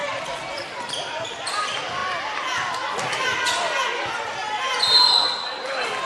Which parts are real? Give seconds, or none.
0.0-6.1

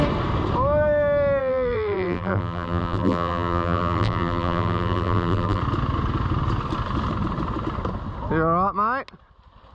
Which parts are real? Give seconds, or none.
0.0-1.4; 5.6-9.7

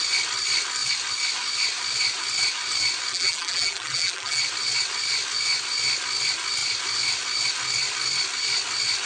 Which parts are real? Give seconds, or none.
0.0-3.1; 4.4-9.1

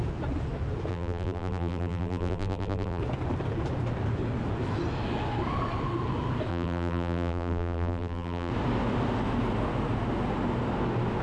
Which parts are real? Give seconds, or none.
0.0-0.9; 3.0-6.5; 8.5-11.2